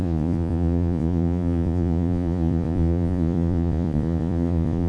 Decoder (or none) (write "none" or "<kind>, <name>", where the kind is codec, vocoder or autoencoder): vocoder, Vocos